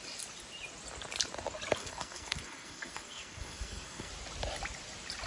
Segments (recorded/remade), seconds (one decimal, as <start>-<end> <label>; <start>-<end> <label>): 0.0-1.8 recorded; 1.8-4.1 remade; 4.1-5.3 recorded